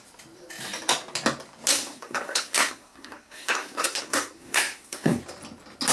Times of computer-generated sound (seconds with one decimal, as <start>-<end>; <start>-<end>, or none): 1.7-5.2